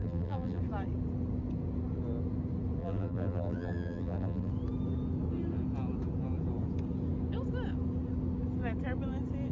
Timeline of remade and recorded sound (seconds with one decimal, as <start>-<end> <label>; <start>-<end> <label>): 0.0-0.6 remade; 0.6-2.8 recorded; 2.8-4.5 remade; 4.5-9.5 recorded